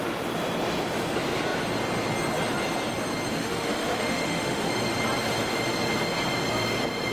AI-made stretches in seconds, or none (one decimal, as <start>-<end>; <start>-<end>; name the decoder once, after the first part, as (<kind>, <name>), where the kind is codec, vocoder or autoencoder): 3.3-4.7 (autoencoder, DAC-VAE)